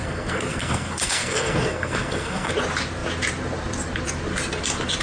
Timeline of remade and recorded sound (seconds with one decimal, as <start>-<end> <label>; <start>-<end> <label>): 0.0-2.5 remade; 2.5-5.0 recorded